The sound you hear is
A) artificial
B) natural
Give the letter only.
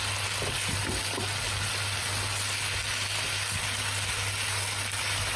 B